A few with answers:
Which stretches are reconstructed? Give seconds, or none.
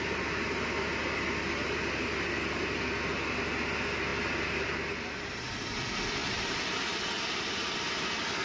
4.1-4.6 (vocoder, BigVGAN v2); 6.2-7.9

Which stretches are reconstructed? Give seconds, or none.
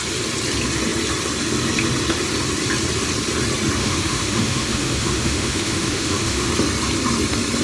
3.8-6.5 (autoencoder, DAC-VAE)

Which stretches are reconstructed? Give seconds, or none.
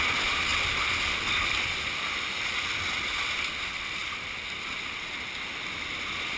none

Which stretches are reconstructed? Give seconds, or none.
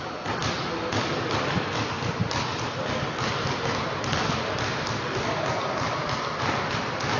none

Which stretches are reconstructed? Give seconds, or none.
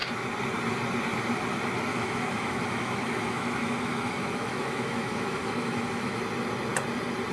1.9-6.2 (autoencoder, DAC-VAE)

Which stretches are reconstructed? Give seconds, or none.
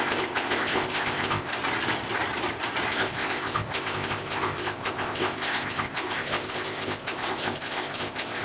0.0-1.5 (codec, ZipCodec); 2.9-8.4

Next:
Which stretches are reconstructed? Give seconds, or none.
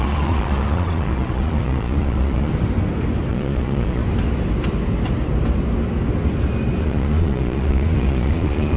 0.0-2.5 (vocoder, Vocos); 3.3-4.0; 6.8-8.8